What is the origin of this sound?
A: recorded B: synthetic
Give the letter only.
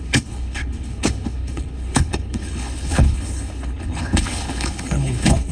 B